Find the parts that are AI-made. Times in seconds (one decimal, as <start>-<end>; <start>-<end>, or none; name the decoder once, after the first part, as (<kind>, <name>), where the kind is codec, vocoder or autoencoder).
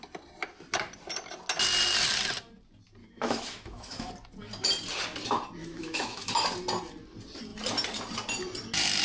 3.0-4.1 (autoencoder, DAC-VAE); 5.6-6.3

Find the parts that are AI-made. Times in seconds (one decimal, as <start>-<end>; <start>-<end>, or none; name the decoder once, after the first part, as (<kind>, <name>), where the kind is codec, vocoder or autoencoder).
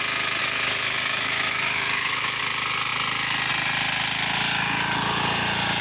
0.4-2.4 (autoencoder, DAC-VAE)